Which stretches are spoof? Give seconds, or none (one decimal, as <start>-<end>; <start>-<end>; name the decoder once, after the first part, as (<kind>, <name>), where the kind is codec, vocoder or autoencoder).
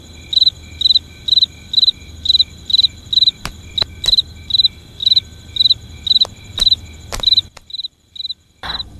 none